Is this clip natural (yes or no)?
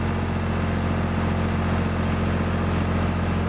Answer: yes